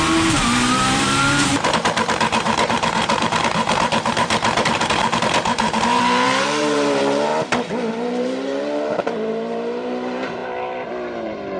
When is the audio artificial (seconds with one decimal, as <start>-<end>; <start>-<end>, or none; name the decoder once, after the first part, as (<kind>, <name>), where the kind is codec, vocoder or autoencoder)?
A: 0.0-7.3 (vocoder, BigVGAN v2); 7.9-11.6